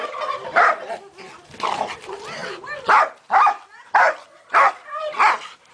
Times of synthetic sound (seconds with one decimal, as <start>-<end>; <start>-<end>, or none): 0.0-2.4; 4.7-5.7